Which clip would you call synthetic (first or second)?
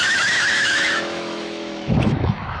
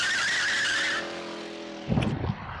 first